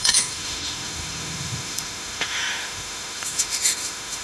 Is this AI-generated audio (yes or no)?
yes